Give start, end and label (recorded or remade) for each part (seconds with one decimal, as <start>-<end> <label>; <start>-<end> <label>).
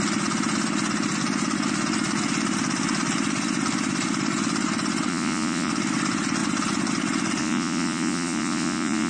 0.0-5.1 recorded; 5.1-5.7 remade; 5.7-7.4 recorded; 7.4-9.1 remade